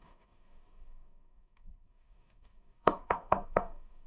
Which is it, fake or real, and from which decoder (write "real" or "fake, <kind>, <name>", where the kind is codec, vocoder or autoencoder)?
fake, codec, DAC